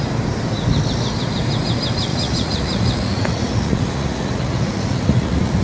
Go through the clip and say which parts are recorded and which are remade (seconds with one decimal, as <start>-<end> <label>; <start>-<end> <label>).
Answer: 0.0-2.1 recorded; 2.1-5.6 remade